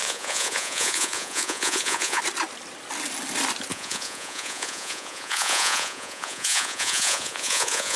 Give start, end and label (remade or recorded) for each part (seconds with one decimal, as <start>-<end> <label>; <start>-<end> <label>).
0.0-2.2 remade; 2.2-3.7 recorded; 3.7-8.0 remade